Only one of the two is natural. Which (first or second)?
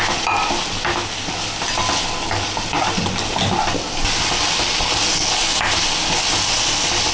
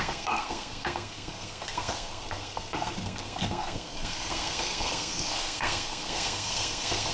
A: first